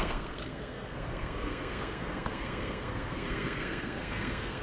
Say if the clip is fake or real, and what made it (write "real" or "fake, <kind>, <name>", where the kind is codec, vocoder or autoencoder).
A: fake, codec, SNAC